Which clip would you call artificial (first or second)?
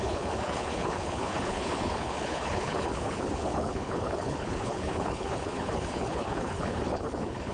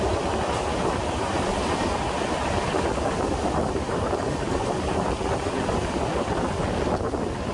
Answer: first